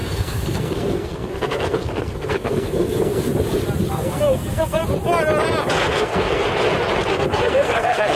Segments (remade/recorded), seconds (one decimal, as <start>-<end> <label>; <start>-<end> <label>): 0.0-3.3 remade; 3.3-3.9 recorded; 3.9-4.8 remade; 4.8-5.7 recorded; 5.7-6.4 remade; 6.4-7.1 recorded; 7.1-8.2 remade